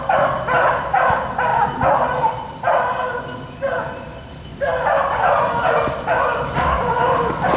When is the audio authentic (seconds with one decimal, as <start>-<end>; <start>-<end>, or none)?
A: 0.0-7.6